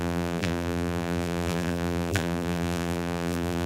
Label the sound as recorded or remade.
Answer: remade